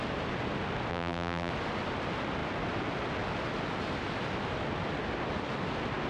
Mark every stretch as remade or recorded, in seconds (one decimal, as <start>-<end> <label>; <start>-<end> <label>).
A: 0.0-0.9 recorded; 0.9-1.5 remade; 1.5-6.1 recorded